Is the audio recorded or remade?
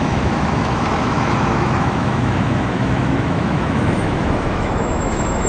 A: remade